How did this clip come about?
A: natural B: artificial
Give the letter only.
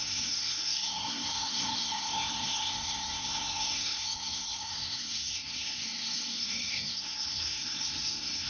B